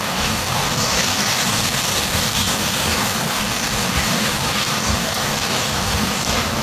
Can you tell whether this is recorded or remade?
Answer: remade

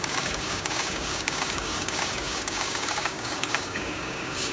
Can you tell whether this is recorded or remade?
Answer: remade